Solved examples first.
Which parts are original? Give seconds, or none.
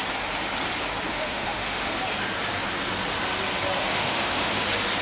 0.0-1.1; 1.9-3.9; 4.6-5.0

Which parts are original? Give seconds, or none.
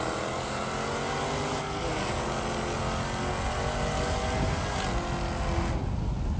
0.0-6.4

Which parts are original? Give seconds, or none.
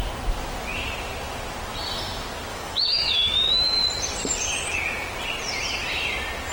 0.0-2.5; 3.8-6.5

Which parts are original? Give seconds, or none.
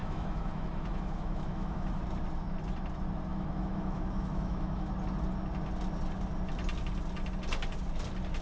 2.0-3.3; 4.9-8.4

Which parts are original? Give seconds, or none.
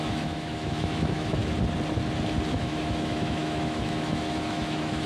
1.4-2.5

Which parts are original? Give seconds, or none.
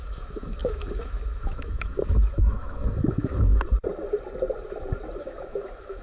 3.5-5.2